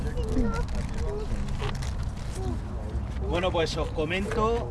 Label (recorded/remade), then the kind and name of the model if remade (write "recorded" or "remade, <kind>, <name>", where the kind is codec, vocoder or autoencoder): recorded